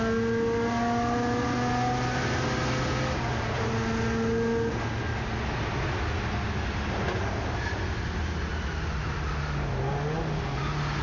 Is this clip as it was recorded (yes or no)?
yes